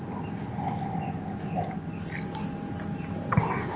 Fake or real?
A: real